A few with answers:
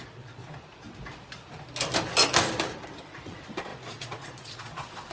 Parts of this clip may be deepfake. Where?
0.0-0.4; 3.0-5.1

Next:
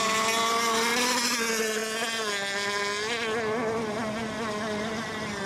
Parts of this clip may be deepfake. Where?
none

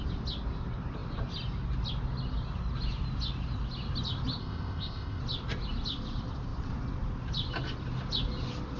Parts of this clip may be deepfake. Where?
4.4-5.2

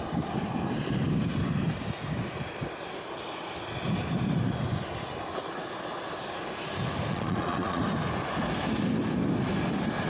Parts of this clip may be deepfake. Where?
7.1-7.8

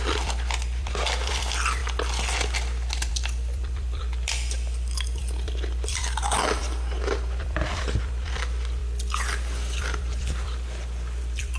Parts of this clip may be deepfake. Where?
0.0-1.8; 3.1-6.0; 6.6-8.8; 9.8-11.6

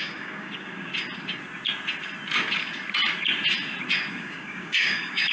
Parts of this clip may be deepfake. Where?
0.0-0.9; 4.1-5.3

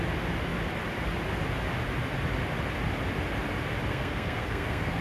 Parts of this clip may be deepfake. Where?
3.9-5.0

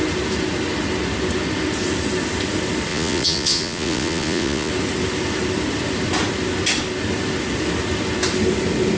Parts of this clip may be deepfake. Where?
2.9-4.7